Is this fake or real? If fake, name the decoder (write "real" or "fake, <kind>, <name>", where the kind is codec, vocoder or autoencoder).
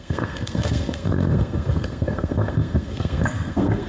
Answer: fake, codec, SNAC